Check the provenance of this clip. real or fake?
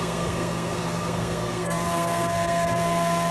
fake